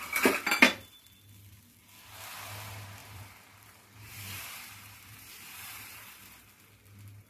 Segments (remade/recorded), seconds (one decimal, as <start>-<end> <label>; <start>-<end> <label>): 0.0-3.0 recorded; 3.0-6.5 remade; 6.5-7.3 recorded